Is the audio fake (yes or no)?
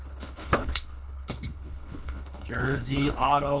yes